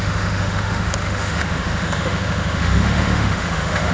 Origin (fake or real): fake